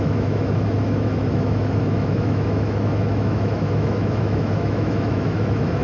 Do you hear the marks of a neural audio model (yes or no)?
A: yes